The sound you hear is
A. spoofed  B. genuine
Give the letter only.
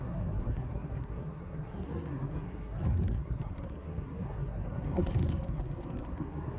A